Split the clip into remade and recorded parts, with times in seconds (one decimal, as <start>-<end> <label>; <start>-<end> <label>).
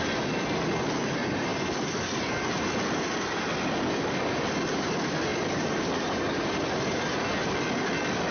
0.0-1.5 recorded; 1.5-2.6 remade; 2.6-5.3 recorded; 5.3-6.7 remade; 6.7-8.3 recorded